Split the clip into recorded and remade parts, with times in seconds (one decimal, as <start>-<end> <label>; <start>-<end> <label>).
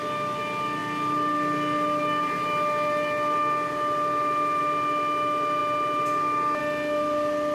0.0-7.5 recorded